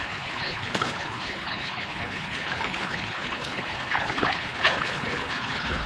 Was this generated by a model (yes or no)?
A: yes